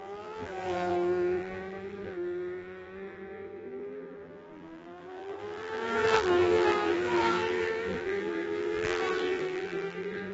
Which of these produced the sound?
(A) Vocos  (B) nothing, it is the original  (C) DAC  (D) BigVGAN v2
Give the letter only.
D